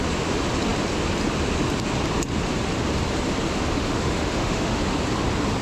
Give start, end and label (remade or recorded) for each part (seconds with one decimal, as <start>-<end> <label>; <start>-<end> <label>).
0.0-3.8 recorded; 3.8-4.8 remade; 4.8-5.6 recorded